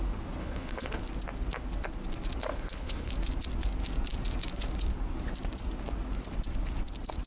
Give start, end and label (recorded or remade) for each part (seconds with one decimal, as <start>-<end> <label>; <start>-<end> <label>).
0.0-0.4 recorded; 0.4-1.0 remade; 1.0-2.5 recorded; 2.5-3.1 remade; 3.1-7.3 recorded